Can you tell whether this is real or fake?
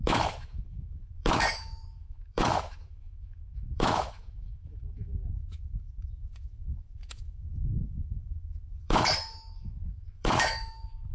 fake